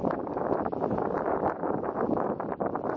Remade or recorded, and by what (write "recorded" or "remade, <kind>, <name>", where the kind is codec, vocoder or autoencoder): remade, vocoder, BigVGAN v2